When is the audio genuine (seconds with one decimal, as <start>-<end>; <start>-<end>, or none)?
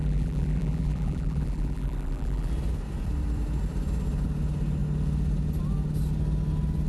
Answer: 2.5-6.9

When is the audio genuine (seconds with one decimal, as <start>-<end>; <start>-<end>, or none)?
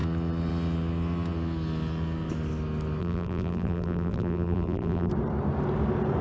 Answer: 0.0-3.0; 5.1-6.2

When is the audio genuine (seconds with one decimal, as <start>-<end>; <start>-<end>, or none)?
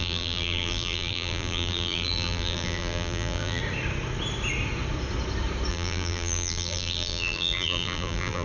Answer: 3.6-5.7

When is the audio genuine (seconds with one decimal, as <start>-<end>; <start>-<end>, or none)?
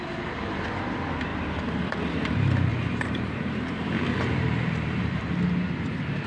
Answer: 0.0-2.7; 5.3-6.3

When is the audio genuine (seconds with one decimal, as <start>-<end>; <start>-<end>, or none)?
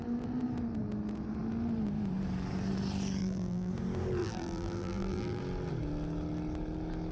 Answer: 0.0-3.2; 3.7-4.2; 5.4-7.1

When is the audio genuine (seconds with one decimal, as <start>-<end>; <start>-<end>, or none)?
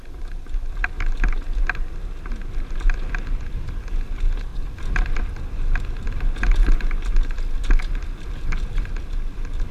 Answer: 0.0-9.7